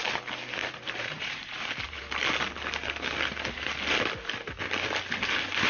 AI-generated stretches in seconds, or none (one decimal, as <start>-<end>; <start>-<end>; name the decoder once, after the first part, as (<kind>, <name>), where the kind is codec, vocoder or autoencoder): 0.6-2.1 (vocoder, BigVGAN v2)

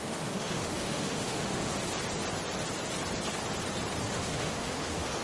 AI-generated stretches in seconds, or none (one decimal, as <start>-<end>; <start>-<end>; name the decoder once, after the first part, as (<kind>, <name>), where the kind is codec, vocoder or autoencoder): 0.0-1.7 (autoencoder, DAC-VAE); 4.1-5.2

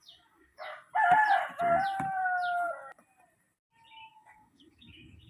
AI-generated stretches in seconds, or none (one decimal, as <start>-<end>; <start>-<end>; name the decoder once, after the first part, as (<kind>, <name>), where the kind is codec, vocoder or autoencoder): 0.0-0.7 (codec, DAC); 3.9-5.3

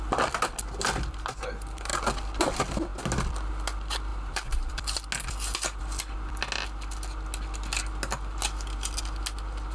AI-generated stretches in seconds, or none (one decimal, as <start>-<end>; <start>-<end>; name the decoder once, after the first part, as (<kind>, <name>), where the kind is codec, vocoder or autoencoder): 4.1-4.7 (vocoder, BigVGAN v2)

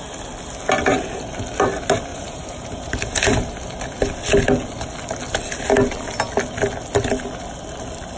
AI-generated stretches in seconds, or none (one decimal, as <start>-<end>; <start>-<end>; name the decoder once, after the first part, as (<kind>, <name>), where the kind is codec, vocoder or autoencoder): 2.1-3.3 (vocoder, BigVGAN v2)

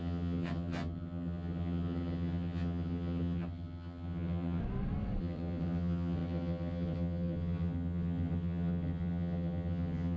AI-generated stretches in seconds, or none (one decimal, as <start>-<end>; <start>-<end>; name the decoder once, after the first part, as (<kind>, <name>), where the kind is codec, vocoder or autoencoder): 0.0-4.6 (vocoder, HiFi-GAN); 5.2-10.2

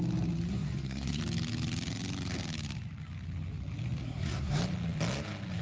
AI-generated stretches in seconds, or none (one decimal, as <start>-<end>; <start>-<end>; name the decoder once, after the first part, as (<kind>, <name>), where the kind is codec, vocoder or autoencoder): 0.5-1.2 (codec, SNAC); 4.0-4.6

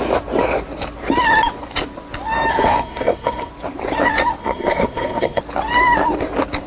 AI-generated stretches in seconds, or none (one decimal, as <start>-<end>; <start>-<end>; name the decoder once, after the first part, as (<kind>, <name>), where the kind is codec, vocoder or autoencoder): 2.5-3.5 (codec, SNAC); 4.4-5.4